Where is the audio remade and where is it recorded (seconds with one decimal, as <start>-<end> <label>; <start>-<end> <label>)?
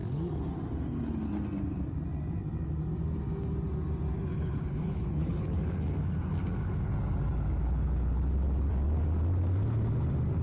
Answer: 0.0-4.3 recorded; 4.3-5.6 remade; 5.6-10.4 recorded